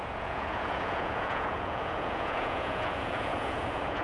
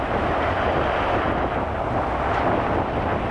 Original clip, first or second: second